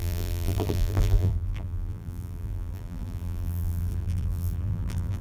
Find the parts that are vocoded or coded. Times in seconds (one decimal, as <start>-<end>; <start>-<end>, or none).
0.0-5.2